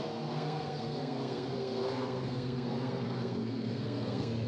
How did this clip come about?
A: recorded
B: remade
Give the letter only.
B